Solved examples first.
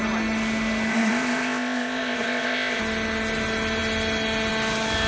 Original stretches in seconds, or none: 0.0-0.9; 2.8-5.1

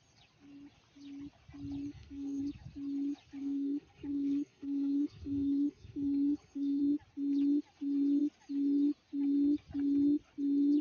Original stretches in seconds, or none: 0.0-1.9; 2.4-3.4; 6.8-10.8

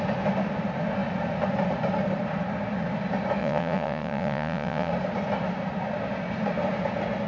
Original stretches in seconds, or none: 0.0-3.4; 4.9-7.3